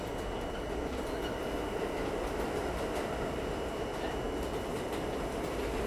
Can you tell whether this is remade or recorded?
recorded